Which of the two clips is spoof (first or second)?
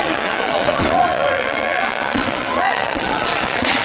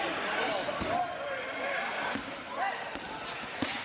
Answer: first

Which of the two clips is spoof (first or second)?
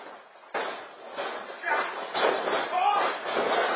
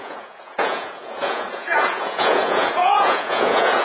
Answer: second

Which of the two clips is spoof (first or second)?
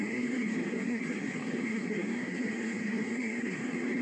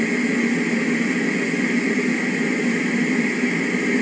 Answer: first